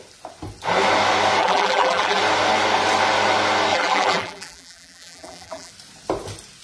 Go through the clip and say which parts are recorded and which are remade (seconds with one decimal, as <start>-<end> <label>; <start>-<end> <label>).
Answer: 0.0-1.4 recorded; 1.4-2.2 remade; 2.2-3.7 recorded; 3.7-5.7 remade; 5.7-6.6 recorded